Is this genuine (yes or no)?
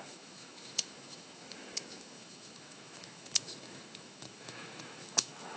no